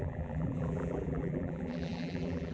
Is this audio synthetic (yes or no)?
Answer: yes